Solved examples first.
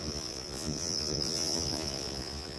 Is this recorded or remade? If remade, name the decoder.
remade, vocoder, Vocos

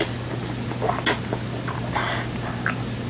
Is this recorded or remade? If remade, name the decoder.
recorded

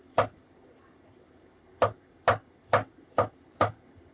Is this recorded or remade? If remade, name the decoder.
recorded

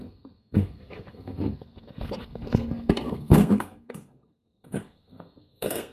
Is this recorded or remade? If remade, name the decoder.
remade, codec, SNAC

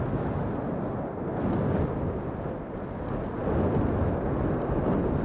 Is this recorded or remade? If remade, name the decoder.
recorded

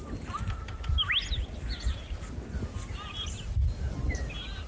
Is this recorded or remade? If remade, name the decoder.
recorded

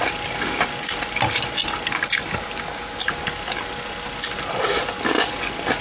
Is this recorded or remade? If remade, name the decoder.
recorded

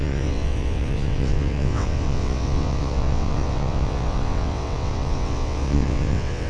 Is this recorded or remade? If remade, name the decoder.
remade, vocoder, WaveNeXt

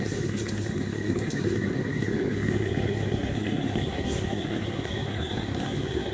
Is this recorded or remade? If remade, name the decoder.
remade, codec, SNAC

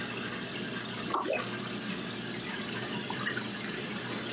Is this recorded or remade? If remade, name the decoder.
recorded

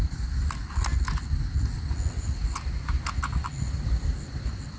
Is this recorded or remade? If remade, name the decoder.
recorded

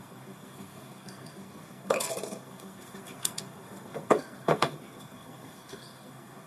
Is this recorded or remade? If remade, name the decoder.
remade, codec, SNAC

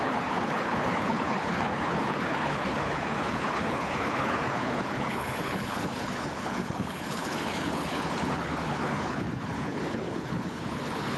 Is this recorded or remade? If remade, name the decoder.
remade, codec, HILCodec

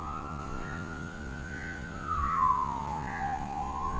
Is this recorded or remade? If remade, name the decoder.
remade, vocoder, Vocos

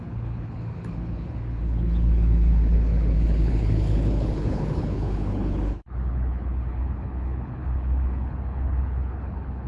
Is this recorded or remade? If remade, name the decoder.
remade, codec, HILCodec